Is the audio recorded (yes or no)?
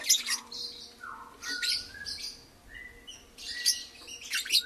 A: yes